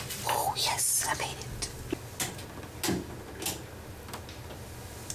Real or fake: real